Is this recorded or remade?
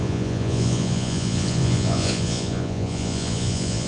remade